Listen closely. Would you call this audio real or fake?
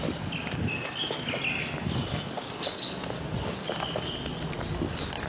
real